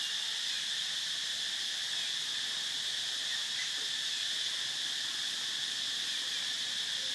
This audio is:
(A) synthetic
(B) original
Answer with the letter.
B